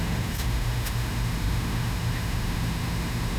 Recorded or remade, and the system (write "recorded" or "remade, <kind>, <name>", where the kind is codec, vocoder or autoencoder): remade, autoencoder, DAC-VAE